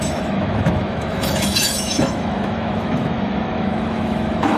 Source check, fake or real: fake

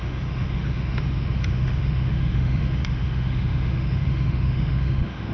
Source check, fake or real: fake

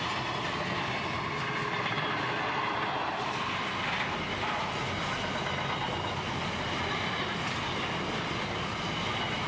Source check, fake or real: real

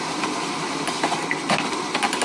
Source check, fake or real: real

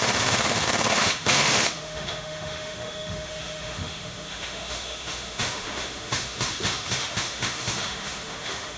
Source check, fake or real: fake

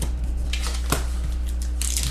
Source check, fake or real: real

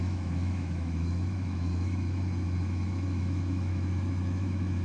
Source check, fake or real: fake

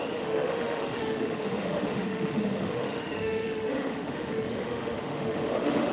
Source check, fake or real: fake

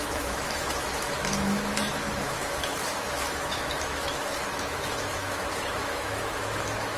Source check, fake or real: fake